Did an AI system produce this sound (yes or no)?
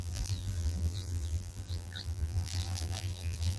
yes